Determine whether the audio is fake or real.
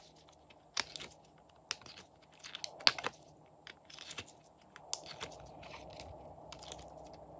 real